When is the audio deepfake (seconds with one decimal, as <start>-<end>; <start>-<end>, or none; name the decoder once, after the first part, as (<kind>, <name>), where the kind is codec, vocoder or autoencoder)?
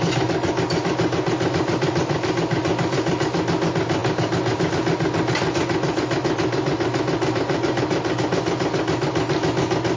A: none